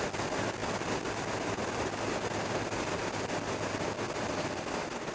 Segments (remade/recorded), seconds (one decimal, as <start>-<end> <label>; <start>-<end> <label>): 0.0-5.1 recorded